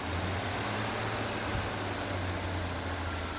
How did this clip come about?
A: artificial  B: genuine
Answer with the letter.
B